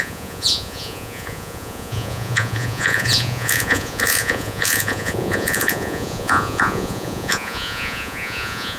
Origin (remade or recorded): remade